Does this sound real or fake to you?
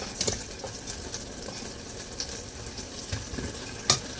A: real